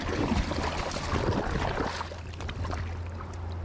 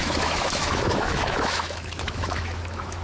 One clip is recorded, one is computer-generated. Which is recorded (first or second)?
first